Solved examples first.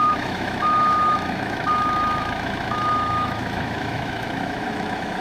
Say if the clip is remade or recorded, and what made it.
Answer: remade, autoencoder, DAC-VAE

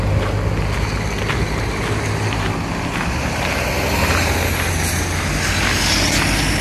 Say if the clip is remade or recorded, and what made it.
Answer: recorded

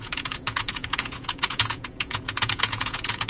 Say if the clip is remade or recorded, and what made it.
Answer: remade, vocoder, Vocos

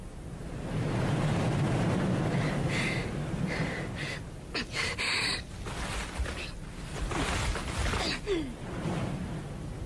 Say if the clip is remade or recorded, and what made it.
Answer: recorded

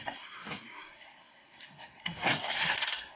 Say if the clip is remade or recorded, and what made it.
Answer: remade, codec, SNAC